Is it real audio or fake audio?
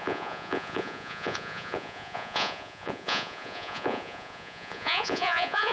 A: fake